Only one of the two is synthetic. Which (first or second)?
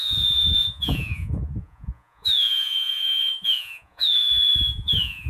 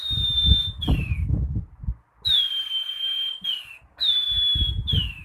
first